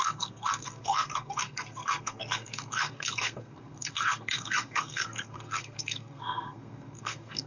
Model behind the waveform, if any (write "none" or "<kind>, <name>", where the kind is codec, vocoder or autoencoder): codec, SNAC